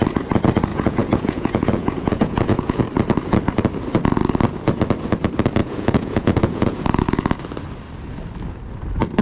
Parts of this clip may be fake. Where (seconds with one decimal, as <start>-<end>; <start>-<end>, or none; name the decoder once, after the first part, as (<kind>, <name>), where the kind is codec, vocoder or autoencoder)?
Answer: 0.7-2.8 (vocoder, Vocos); 5.6-6.8